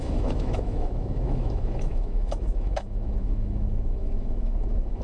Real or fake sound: fake